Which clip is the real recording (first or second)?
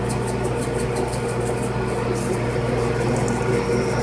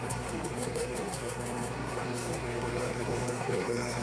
first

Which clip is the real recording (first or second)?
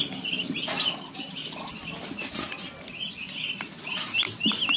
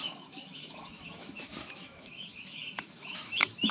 first